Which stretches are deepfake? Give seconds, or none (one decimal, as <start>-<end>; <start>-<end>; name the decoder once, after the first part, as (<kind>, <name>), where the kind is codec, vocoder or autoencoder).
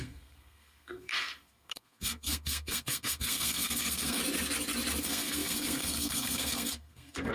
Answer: 0.0-4.2 (codec, SNAC); 5.0-7.3